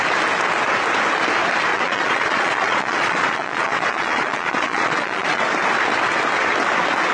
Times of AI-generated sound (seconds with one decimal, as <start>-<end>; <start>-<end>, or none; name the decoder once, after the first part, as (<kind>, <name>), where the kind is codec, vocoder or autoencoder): 1.7-5.4 (vocoder, Vocos)